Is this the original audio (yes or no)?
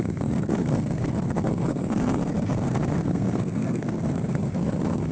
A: no